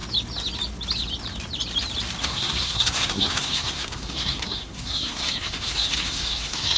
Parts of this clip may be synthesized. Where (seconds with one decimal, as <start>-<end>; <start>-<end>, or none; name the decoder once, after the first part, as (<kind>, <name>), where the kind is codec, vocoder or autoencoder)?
2.2-6.8 (codec, SNAC)